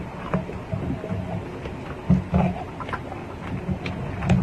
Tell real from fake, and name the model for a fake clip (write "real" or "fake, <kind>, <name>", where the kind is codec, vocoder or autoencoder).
real